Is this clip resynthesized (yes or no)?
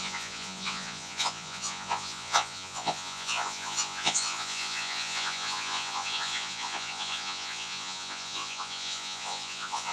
yes